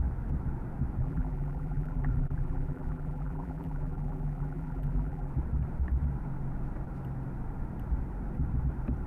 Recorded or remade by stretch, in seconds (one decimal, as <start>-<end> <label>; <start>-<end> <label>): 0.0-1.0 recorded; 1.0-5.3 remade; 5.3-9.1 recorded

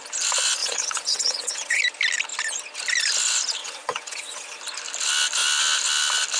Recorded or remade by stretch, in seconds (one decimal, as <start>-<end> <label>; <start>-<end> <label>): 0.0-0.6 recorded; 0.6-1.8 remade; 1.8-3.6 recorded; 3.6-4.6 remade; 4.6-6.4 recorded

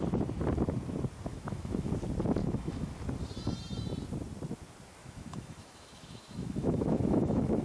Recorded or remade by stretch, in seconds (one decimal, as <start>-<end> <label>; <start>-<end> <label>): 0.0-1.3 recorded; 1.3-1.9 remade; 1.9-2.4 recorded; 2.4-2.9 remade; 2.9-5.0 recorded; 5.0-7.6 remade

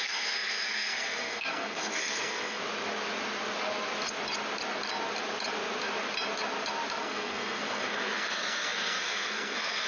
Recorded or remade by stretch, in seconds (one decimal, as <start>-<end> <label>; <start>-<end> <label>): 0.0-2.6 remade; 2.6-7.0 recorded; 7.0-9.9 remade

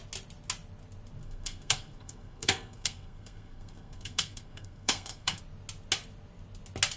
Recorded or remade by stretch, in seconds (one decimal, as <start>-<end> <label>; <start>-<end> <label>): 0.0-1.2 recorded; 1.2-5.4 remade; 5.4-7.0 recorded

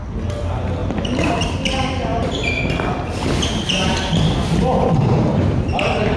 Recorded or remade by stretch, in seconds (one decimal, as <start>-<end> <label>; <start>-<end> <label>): 0.0-0.8 recorded; 0.8-1.3 remade; 1.3-2.1 recorded; 2.1-2.6 remade; 2.6-5.0 recorded; 5.0-6.2 remade